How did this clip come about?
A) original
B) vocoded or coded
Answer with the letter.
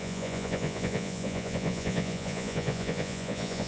B